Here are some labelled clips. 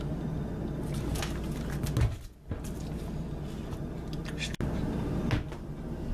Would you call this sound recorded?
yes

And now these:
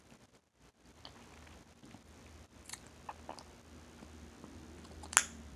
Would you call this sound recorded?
yes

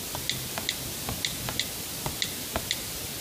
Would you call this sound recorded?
yes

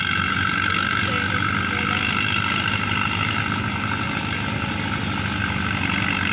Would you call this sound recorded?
yes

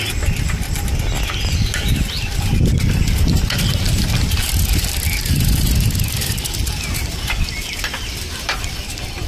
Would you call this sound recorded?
no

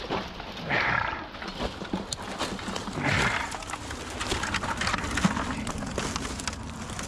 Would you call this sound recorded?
yes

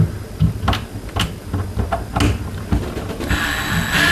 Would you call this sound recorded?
yes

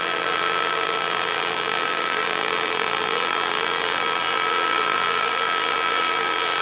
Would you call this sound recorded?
no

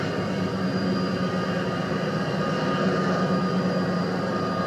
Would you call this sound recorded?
yes